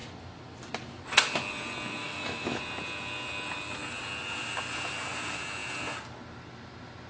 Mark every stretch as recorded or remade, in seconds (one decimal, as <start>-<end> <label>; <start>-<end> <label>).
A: 0.0-2.0 recorded; 2.0-2.6 remade; 2.6-7.1 recorded